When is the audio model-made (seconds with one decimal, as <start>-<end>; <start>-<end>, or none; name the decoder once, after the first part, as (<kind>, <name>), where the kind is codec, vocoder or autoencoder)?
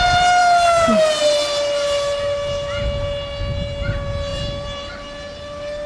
4.3-4.9 (vocoder, BigVGAN v2)